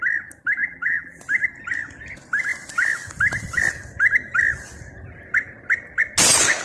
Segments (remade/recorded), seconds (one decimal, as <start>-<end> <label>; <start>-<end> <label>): 0.0-0.6 recorded; 0.6-1.2 remade; 1.2-6.6 recorded